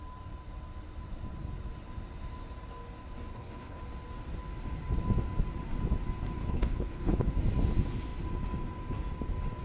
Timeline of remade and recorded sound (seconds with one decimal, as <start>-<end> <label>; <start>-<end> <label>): 0.0-3.3 recorded; 3.3-3.8 remade; 3.8-6.4 recorded; 6.4-7.3 remade; 7.3-9.6 recorded